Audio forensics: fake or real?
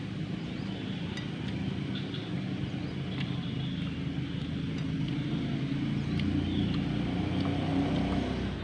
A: real